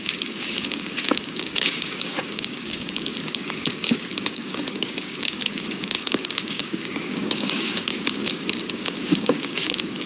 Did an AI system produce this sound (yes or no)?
yes